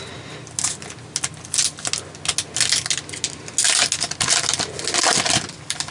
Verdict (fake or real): real